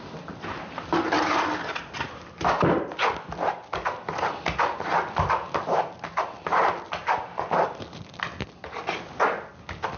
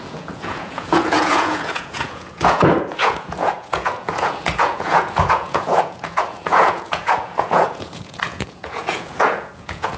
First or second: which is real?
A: first